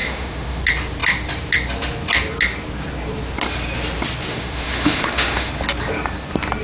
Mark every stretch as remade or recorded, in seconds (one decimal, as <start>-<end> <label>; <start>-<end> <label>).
0.0-0.6 remade; 0.6-4.3 recorded; 4.3-5.5 remade; 5.5-6.6 recorded